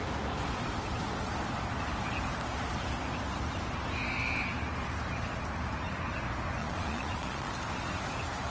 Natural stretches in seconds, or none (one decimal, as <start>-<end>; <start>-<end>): 0.0-6.6; 7.5-8.5